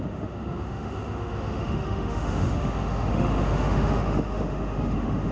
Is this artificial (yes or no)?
yes